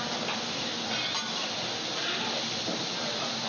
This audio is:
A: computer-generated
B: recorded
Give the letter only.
B